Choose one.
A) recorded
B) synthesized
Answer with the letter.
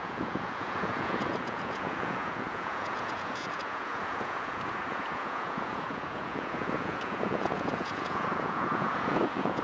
B